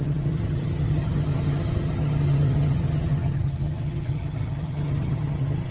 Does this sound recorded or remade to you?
remade